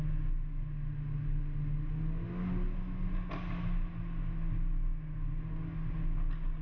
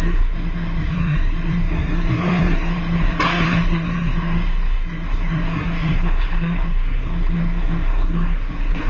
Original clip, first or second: first